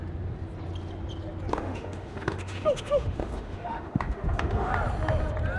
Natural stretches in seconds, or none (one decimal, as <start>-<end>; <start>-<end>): 0.0-1.5; 4.7-5.6